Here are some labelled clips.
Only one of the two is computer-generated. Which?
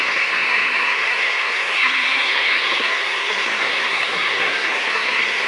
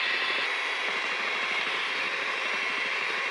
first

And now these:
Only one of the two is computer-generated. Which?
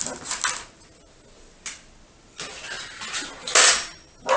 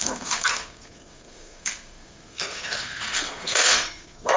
second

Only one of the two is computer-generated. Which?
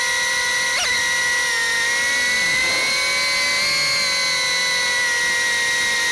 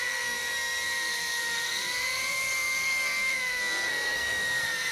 second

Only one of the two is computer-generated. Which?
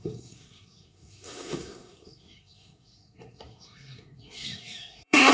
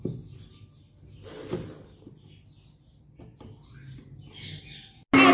first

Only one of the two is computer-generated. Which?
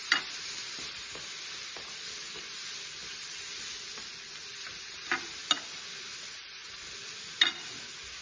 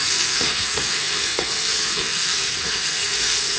second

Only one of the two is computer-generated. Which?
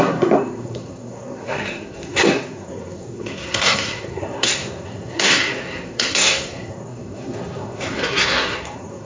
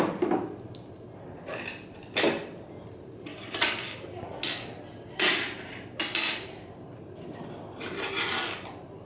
first